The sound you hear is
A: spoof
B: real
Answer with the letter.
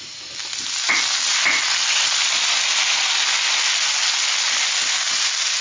B